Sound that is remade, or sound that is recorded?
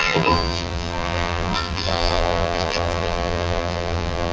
remade